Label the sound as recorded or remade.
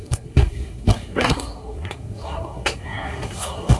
remade